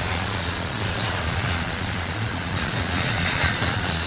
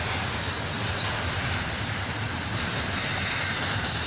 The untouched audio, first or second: second